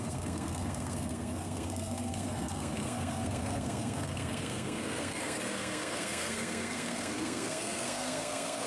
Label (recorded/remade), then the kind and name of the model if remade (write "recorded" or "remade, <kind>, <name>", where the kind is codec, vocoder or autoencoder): remade, codec, SNAC